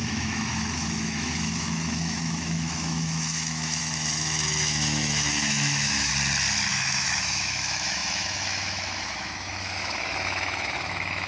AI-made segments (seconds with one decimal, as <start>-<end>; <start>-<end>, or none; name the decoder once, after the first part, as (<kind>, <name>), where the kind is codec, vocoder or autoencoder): 0.0-6.1 (autoencoder, DAC-VAE); 6.7-11.3